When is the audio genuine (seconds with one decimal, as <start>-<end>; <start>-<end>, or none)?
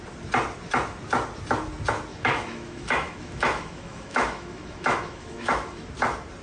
0.0-2.1; 5.9-6.4